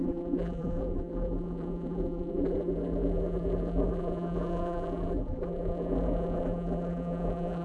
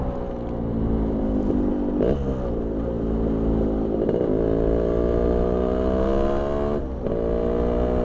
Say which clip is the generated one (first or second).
first